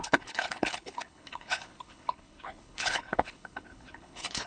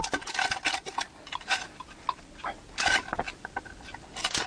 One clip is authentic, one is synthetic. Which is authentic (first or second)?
second